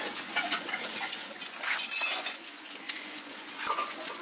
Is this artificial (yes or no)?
yes